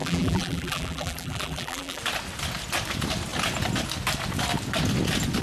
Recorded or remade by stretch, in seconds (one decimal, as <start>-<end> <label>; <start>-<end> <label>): 0.0-2.0 remade; 2.0-5.4 recorded